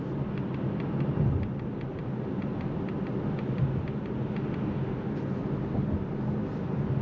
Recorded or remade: recorded